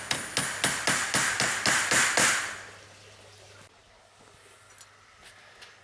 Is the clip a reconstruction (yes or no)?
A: no